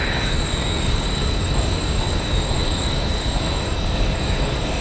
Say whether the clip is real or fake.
fake